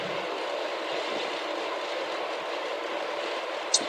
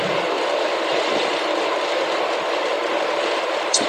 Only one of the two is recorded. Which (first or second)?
first